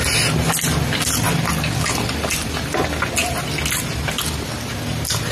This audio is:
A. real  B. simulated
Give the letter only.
A